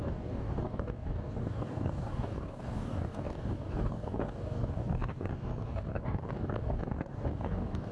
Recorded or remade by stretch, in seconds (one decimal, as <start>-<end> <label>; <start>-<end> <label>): 0.0-7.9 remade